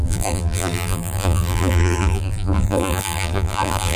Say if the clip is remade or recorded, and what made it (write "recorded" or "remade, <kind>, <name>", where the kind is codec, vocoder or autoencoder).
remade, vocoder, BigVGAN v2